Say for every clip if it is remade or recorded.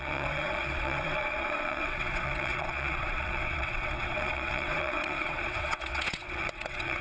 remade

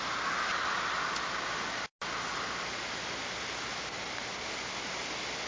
recorded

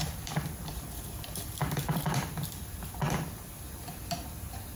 remade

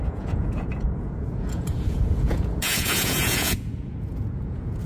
remade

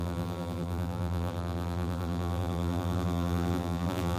remade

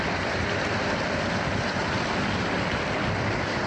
remade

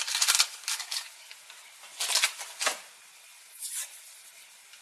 recorded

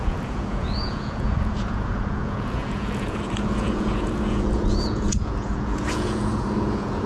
remade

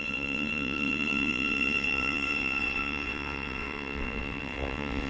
remade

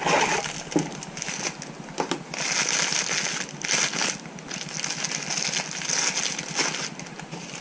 recorded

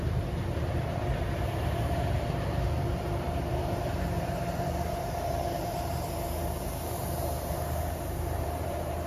remade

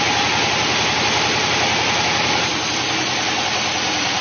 recorded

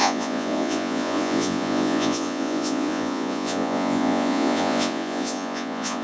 remade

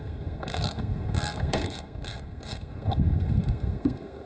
remade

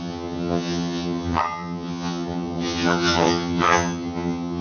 remade